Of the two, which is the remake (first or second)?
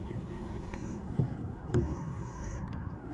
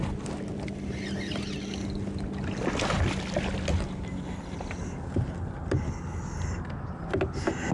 first